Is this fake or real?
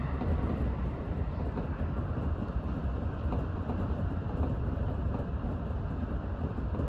fake